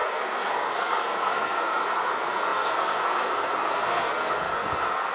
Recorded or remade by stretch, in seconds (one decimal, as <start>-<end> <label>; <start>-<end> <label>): 0.0-5.1 remade